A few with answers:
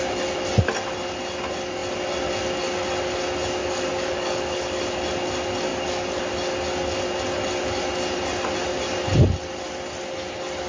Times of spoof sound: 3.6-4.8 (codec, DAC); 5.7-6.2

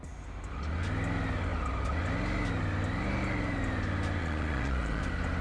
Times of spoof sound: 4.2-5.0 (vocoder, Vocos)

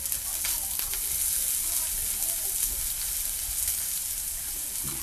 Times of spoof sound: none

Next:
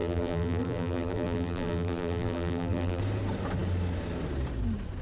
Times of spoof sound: 0.0-3.0 (vocoder, BigVGAN v2)

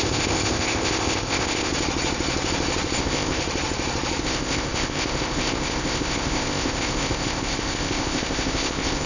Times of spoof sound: 0.0-1.7 (codec, ZipCodec); 3.0-3.4; 4.2-9.1